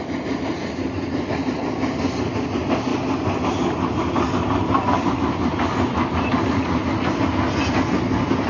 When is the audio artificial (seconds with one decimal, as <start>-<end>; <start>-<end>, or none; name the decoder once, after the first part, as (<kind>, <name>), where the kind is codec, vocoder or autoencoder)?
none

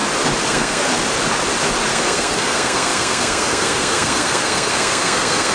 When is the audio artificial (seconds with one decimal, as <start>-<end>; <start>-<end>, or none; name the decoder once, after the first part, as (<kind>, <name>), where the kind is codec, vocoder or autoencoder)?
0.5-0.9 (codec, SNAC); 1.9-5.5

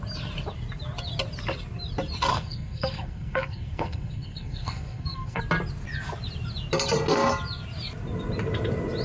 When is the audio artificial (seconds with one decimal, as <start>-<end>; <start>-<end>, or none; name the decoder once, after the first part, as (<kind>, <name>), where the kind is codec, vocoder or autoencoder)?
2.3-5.4 (codec, SNAC)

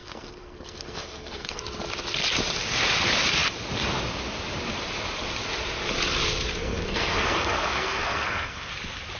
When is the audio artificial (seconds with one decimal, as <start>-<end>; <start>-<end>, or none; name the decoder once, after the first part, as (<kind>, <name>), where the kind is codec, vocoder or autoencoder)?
0.0-1.6 (codec, SNAC); 6.6-8.7